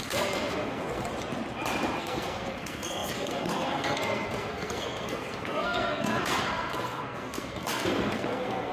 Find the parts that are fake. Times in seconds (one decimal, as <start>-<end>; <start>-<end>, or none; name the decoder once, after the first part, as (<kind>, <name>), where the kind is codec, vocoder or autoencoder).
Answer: 0.0-1.1 (codec, SNAC); 2.0-8.7

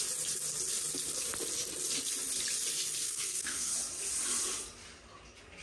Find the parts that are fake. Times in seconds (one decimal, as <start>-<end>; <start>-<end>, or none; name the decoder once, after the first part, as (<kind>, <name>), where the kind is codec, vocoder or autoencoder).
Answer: 3.0-3.7 (codec, SNAC)

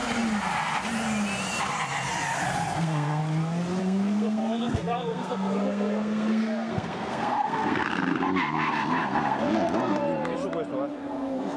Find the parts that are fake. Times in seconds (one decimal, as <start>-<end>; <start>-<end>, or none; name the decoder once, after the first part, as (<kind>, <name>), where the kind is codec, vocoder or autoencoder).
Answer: 2.7-3.2 (codec, SNAC); 3.8-10.0; 10.9-11.6

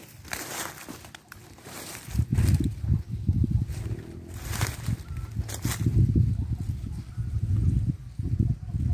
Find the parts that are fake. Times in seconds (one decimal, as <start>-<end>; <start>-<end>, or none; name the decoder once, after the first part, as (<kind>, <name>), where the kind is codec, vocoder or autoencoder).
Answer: none

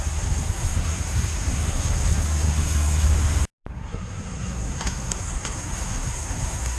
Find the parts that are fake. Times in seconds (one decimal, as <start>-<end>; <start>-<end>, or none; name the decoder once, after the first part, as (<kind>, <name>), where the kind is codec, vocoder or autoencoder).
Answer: 0.0-3.1 (codec, SNAC); 3.7-6.8